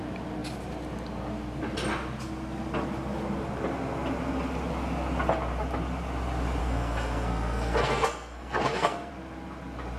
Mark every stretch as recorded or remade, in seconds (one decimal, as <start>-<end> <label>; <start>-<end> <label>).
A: 0.0-6.6 recorded; 6.6-9.1 remade; 9.1-10.0 recorded